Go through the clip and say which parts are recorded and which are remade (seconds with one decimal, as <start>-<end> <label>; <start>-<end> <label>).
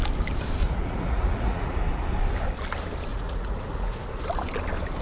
0.0-0.6 recorded; 0.6-1.8 remade; 1.8-3.1 recorded; 3.1-4.2 remade; 4.2-5.0 recorded